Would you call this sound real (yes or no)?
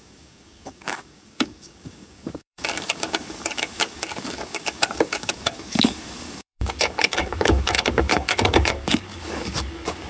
no